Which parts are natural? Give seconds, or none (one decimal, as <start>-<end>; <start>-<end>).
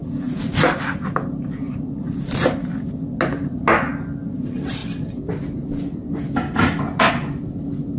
0.0-8.0